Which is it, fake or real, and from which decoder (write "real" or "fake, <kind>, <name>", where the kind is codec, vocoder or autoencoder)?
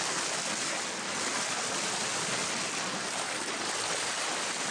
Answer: real